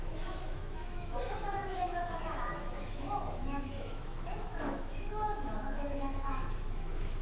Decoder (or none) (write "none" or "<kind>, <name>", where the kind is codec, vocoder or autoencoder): autoencoder, DAC-VAE